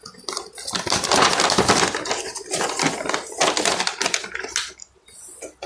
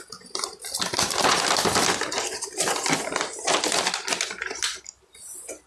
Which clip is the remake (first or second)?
second